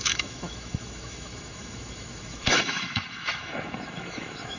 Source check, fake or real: fake